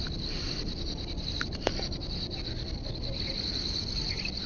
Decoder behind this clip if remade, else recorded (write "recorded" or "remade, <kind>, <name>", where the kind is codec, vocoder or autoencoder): recorded